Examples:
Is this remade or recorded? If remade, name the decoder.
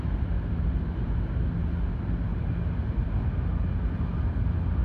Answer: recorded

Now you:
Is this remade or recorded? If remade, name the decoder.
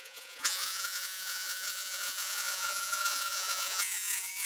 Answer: remade, vocoder, Vocos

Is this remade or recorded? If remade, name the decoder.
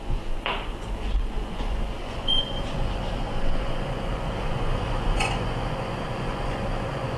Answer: remade, vocoder, Vocos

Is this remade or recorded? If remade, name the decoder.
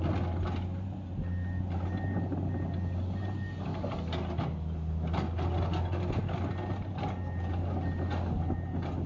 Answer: recorded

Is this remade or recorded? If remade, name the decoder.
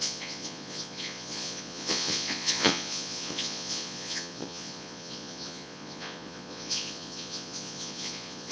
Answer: remade, vocoder, Vocos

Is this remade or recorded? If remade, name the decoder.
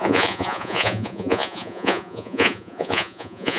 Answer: remade, vocoder, Vocos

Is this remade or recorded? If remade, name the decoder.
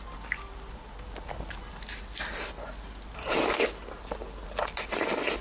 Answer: recorded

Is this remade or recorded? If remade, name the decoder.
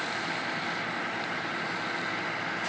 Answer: recorded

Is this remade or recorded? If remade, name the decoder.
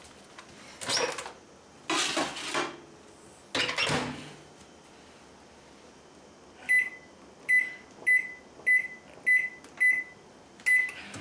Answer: recorded